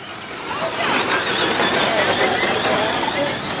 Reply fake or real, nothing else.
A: real